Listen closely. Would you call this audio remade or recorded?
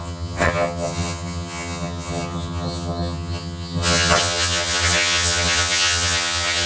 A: remade